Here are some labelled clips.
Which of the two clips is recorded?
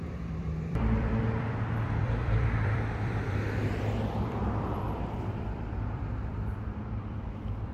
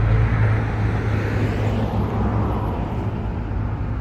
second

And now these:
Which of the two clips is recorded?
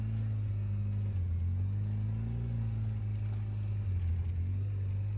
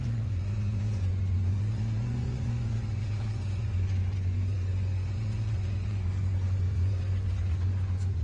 first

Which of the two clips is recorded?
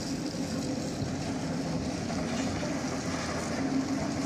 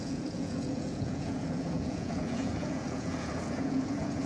first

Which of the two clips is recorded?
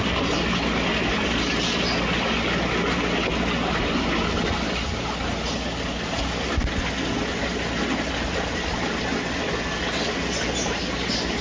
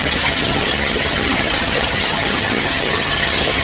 first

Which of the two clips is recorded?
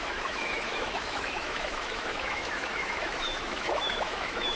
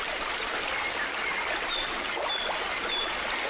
second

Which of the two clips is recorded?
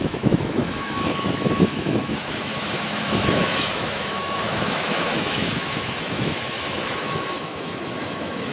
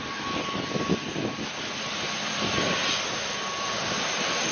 second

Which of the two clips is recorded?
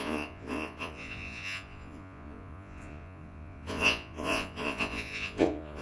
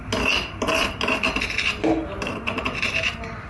second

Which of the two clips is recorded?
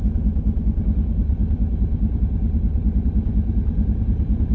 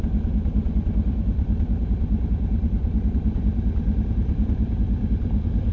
first